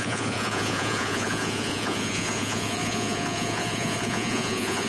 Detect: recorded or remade remade